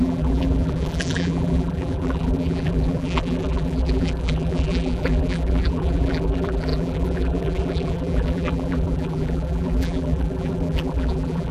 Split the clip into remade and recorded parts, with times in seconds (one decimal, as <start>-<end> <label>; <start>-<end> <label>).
0.0-11.5 remade